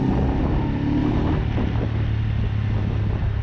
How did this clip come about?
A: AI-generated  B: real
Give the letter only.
B